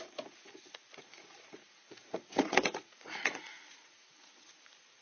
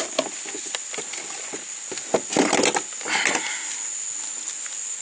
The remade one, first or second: first